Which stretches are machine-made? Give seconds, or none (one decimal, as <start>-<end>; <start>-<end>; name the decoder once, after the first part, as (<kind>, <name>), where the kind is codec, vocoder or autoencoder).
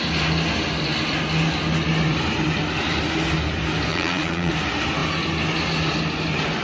3.9-4.5 (vocoder, Vocos)